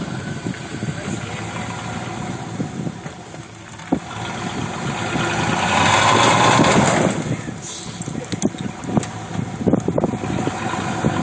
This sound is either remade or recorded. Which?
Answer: recorded